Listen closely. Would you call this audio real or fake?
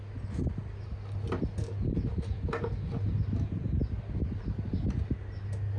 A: real